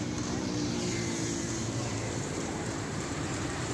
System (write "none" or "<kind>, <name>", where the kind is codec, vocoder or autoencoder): vocoder, BigVGAN v2